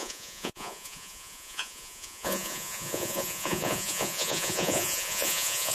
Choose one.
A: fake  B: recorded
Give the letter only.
A